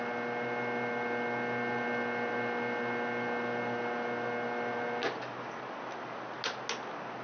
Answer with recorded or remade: recorded